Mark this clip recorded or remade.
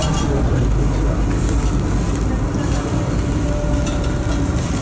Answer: recorded